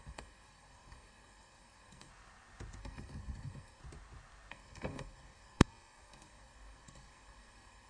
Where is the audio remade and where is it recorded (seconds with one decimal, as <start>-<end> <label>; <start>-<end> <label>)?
0.0-2.1 remade; 2.1-2.8 recorded; 2.8-3.8 remade; 3.8-4.5 recorded; 4.5-7.9 remade